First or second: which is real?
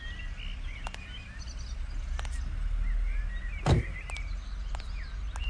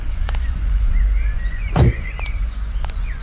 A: first